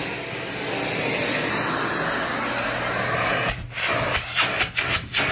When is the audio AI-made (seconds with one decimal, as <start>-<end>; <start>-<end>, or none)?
none